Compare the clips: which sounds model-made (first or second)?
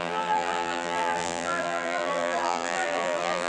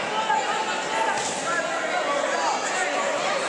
first